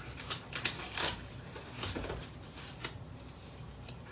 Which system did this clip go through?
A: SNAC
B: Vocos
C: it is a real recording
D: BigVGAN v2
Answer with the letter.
D